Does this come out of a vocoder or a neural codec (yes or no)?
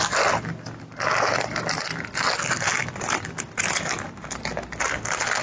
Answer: no